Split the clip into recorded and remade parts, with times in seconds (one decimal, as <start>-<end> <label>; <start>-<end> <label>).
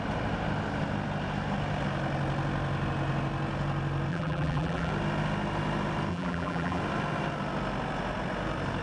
0.0-4.1 recorded; 4.1-4.9 remade; 4.9-6.1 recorded; 6.1-6.8 remade; 6.8-8.8 recorded